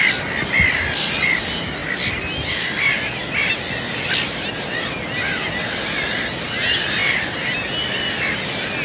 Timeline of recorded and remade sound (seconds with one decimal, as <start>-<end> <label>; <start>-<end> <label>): 0.0-8.8 recorded